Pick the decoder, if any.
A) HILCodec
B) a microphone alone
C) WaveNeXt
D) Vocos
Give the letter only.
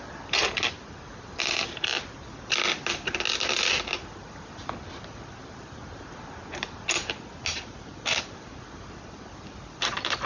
B